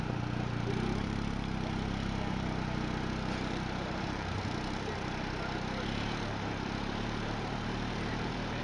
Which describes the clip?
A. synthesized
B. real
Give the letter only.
A